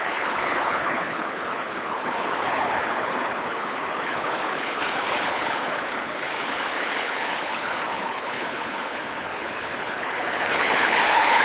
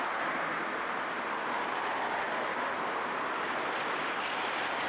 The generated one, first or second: first